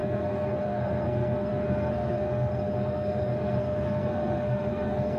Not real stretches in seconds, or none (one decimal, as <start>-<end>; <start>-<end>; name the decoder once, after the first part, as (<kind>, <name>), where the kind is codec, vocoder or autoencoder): 0.0-5.2 (codec, SNAC)